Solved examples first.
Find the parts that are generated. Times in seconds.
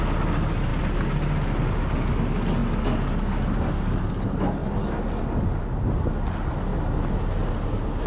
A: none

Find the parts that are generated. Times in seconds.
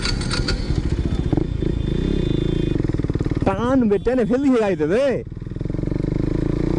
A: none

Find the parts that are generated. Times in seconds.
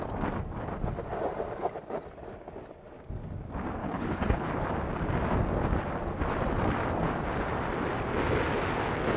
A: 3.8-4.5 (codec, HILCodec)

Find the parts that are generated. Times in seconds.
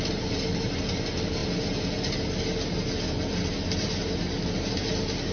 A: none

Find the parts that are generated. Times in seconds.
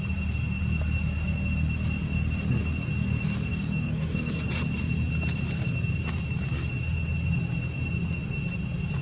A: 3.5-4.3 (codec, DAC)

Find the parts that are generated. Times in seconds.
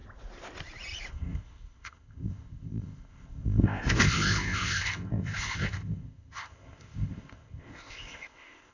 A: 1.1-8.7 (codec, ZipCodec)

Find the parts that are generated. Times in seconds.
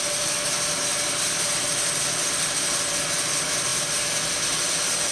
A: none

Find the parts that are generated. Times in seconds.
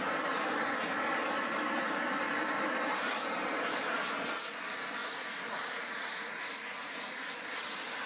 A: 5.0-7.3 (vocoder, Vocos)